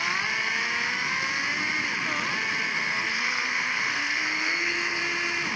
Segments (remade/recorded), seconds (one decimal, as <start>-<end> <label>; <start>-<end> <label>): 0.0-2.7 recorded; 2.7-5.0 remade; 5.0-5.6 recorded